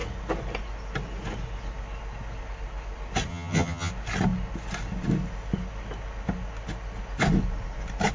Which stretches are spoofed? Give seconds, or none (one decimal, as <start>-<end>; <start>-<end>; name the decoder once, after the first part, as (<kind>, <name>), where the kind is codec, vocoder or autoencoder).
3.3-3.9 (vocoder, HiFi-GAN)